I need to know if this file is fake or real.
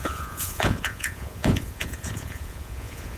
fake